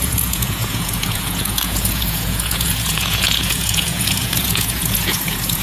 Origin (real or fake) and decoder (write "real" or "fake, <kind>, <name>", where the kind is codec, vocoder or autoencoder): fake, vocoder, Vocos